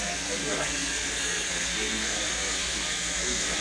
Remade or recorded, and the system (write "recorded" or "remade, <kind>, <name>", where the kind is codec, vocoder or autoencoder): remade, codec, SNAC